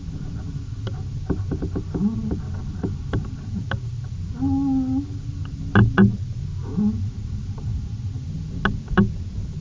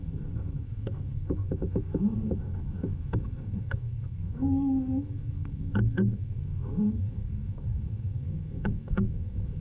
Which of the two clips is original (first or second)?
first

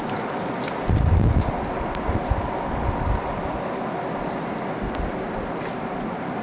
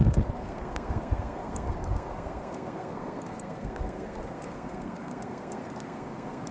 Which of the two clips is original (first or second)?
first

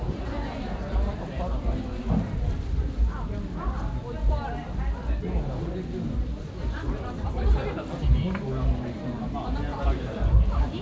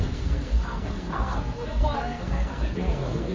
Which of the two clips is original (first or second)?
first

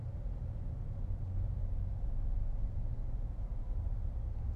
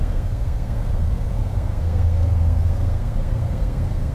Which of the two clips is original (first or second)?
first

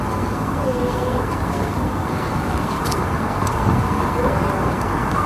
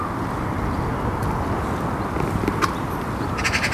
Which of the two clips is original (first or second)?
second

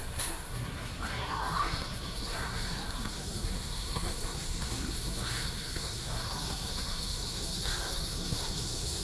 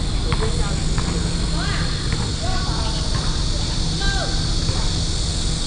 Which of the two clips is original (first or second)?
second